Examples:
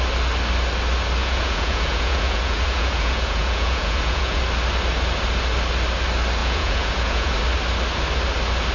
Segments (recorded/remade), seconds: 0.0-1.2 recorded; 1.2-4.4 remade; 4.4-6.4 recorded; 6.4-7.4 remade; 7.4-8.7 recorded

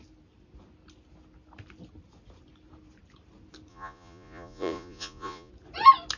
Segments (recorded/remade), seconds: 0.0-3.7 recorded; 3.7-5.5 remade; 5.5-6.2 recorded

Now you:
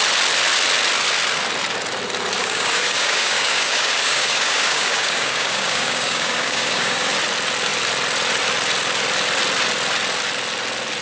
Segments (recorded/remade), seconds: 0.0-2.4 recorded; 2.4-7.1 remade; 7.1-11.0 recorded

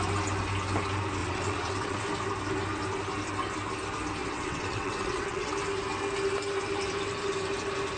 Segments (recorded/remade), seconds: 0.0-1.2 recorded; 1.2-2.0 remade; 2.0-4.2 recorded; 4.2-5.5 remade; 5.5-8.0 recorded